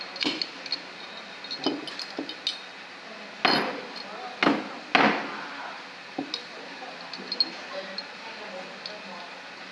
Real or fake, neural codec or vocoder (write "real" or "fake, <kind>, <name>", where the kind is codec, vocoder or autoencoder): real